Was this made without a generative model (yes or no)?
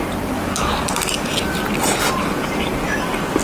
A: yes